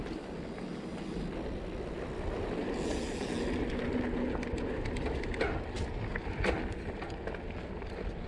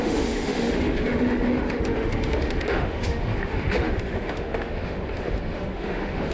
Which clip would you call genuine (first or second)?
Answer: first